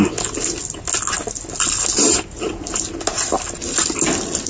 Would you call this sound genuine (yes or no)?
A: yes